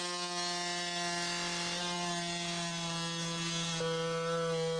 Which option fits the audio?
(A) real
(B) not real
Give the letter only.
A